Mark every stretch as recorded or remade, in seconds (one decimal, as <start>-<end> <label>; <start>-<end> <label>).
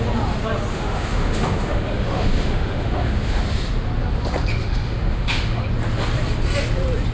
0.0-0.7 recorded; 0.7-3.4 remade; 3.4-4.5 recorded; 4.5-5.6 remade; 5.6-7.1 recorded